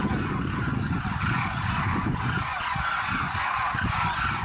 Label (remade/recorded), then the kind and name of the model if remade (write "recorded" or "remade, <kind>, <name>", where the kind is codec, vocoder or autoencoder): remade, vocoder, Vocos